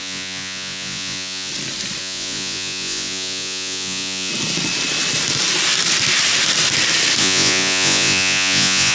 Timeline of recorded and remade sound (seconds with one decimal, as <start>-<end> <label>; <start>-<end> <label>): 0.0-1.5 remade; 1.5-2.0 recorded; 2.0-4.3 remade; 4.3-7.2 recorded; 7.2-8.9 remade